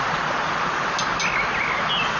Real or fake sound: real